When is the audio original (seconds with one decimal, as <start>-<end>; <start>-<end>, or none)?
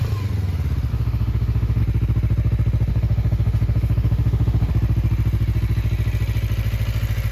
0.0-0.9; 1.8-2.9; 4.7-7.3